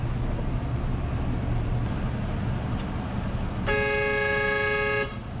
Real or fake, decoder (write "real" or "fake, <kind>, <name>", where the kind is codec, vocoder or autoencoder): real